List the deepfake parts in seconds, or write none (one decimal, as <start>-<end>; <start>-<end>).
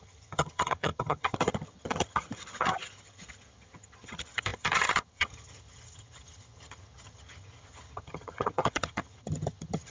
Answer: 0.0-9.9